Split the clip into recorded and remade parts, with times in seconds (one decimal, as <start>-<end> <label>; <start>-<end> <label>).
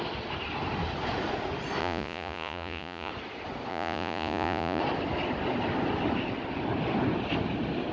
0.0-1.8 recorded; 1.8-3.1 remade; 3.1-3.7 recorded; 3.7-4.8 remade; 4.8-7.9 recorded